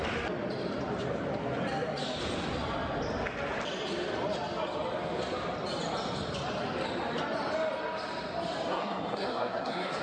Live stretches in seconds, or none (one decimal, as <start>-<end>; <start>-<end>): 0.0-8.7

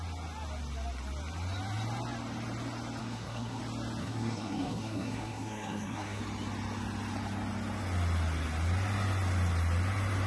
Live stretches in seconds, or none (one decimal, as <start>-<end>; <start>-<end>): 0.0-3.0; 3.6-4.0; 6.2-10.3

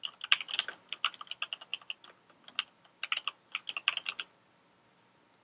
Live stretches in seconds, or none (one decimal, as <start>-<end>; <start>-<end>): 0.0-5.4